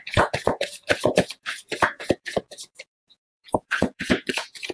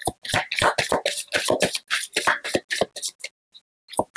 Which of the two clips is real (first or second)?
second